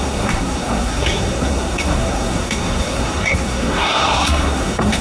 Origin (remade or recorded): remade